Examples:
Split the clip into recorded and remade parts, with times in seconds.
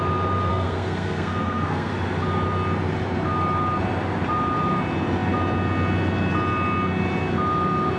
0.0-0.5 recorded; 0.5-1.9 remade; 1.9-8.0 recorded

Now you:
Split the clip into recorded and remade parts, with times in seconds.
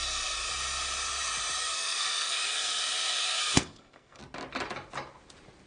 0.0-0.5 remade; 0.5-1.6 recorded; 1.6-4.2 remade; 4.2-5.7 recorded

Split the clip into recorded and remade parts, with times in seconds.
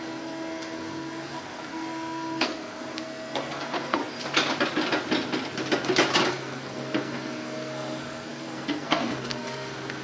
0.0-4.0 remade; 4.0-6.3 recorded; 6.3-10.0 remade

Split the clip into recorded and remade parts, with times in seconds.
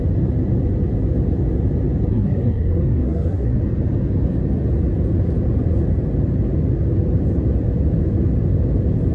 0.0-2.1 recorded; 2.1-3.6 remade; 3.6-9.1 recorded